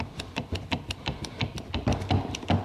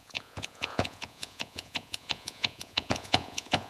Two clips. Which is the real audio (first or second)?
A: first